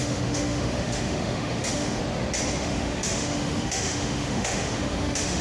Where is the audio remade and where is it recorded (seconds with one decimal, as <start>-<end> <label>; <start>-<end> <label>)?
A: 0.0-2.0 remade; 2.0-2.6 recorded; 2.6-5.4 remade